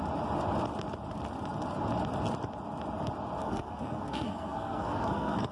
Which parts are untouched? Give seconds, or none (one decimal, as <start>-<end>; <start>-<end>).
0.0-3.4